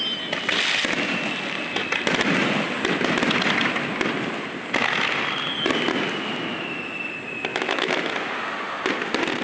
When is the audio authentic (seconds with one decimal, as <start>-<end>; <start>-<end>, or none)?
0.0-7.5; 8.1-9.4